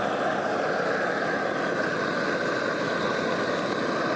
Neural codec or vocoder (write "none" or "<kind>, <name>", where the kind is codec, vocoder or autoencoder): none